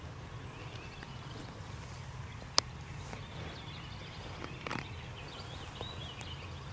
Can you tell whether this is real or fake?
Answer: real